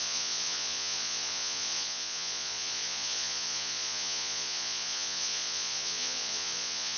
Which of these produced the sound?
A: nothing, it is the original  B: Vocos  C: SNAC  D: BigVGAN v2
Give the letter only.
B